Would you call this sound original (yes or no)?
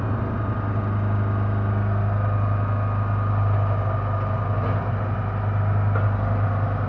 yes